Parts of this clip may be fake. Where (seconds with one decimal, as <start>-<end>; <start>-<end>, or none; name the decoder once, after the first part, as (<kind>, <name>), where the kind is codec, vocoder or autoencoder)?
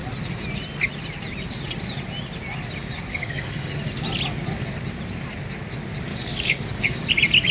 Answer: 3.1-3.7 (codec, DAC); 6.1-7.1